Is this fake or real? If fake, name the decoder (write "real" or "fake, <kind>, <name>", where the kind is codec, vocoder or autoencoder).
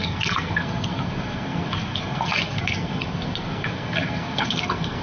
fake, codec, SNAC